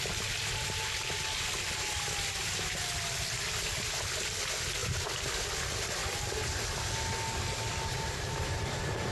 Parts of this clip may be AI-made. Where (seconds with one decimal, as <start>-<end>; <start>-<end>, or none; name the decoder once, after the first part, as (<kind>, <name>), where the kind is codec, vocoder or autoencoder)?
none